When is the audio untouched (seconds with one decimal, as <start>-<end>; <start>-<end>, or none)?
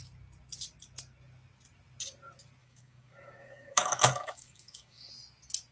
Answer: 0.0-2.6; 5.1-5.7